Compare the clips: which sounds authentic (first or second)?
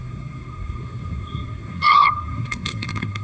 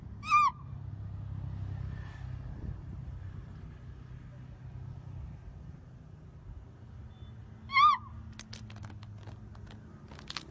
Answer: second